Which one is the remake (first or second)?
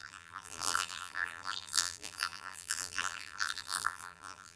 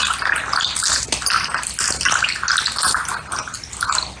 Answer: first